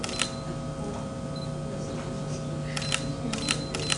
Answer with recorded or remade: recorded